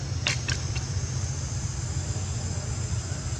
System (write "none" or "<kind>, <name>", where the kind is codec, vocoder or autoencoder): vocoder, BigVGAN v2